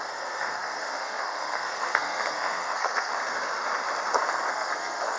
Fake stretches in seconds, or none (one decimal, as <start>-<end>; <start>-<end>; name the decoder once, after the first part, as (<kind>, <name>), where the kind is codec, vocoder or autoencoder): 0.0-3.1 (codec, SNAC); 4.5-5.2